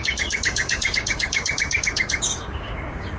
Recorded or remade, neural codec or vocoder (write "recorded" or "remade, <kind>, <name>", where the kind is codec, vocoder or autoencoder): remade, codec, DAC